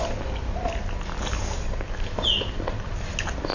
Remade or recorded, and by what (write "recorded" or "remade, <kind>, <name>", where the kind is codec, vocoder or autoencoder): recorded